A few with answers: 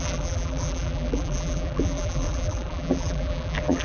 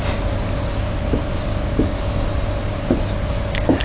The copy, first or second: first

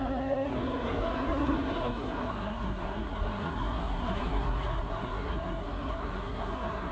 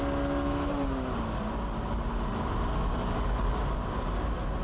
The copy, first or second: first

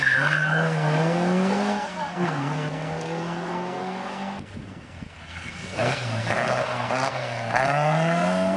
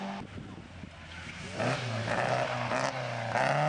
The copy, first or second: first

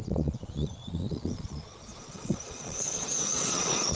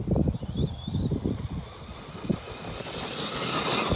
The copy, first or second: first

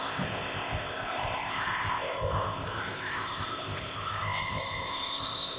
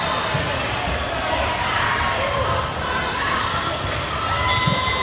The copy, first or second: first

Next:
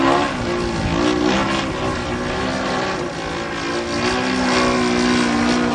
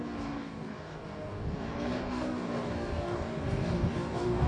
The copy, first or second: second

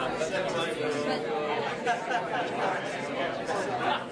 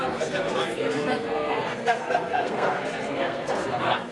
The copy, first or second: second